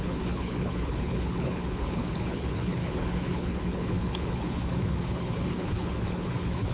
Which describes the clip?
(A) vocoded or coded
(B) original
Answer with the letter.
A